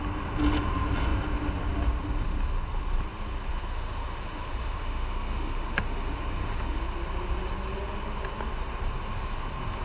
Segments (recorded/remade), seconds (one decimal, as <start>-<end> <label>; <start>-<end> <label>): 0.0-3.5 recorded; 3.5-6.8 remade; 6.8-9.8 recorded